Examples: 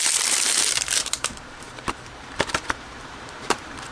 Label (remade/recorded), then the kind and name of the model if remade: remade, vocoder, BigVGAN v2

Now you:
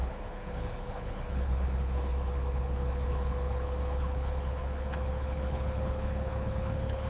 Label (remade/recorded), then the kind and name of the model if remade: remade, codec, HILCodec